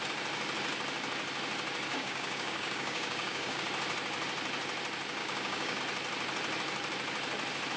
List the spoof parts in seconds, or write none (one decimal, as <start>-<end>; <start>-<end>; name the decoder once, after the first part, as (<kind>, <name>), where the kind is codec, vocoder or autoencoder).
1.9-3.6 (codec, DAC); 5.2-5.8